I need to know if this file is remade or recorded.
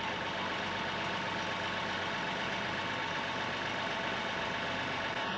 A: recorded